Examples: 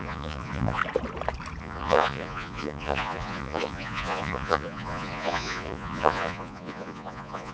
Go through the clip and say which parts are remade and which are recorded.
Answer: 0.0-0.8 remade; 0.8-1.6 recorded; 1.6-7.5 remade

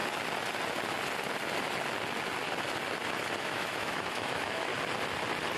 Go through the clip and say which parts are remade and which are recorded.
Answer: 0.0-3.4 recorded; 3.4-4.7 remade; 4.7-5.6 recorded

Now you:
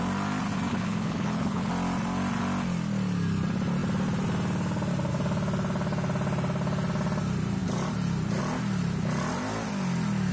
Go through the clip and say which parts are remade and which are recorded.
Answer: 0.0-0.7 recorded; 0.7-1.7 remade; 1.7-10.3 recorded